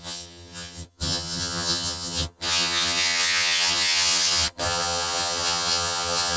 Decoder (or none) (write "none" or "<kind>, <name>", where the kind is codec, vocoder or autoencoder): vocoder, HiFi-GAN